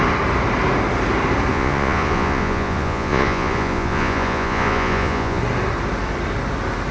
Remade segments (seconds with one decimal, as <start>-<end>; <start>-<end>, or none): 1.5-5.4